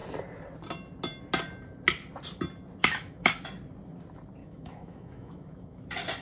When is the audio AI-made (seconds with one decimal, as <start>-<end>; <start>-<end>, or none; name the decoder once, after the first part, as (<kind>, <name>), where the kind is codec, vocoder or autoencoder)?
2.8-3.3 (autoencoder, DAC-VAE); 4.4-5.8